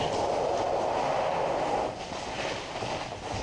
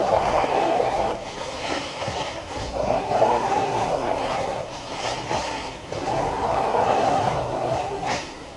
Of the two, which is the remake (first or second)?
second